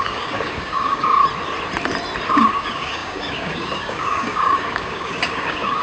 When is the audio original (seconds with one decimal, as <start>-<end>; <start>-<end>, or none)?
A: 1.2-2.3